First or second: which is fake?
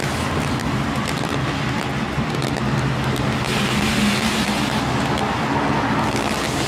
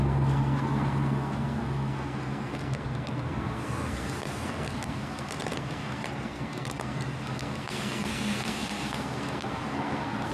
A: second